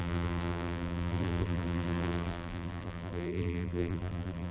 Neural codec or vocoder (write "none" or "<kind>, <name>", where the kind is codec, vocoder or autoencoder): vocoder, BigVGAN v2